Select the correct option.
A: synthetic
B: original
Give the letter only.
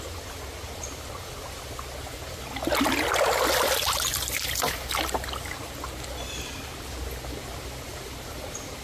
B